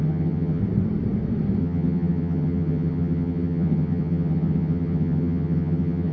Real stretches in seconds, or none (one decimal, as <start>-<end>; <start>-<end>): 0.6-1.6